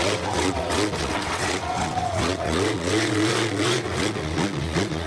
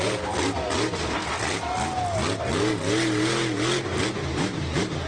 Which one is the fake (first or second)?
first